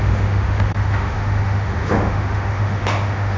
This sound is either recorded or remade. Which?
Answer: remade